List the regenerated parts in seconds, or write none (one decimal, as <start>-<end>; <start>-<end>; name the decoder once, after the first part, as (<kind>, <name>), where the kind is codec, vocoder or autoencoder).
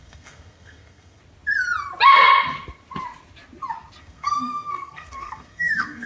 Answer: 0.0-1.2 (codec, SNAC); 4.0-6.1